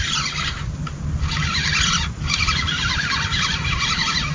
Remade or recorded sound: recorded